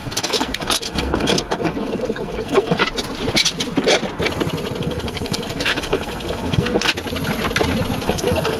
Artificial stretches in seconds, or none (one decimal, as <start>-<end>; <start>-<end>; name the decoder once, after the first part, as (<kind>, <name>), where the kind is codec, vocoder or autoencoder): 0.0-2.8 (codec, SNAC); 4.8-6.9; 8.0-8.6